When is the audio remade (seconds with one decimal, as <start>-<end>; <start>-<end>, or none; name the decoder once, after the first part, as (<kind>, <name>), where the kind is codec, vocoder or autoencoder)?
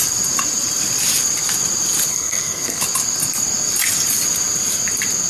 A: 2.1-2.8 (codec, SNAC)